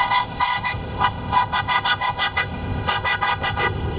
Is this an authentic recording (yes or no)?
no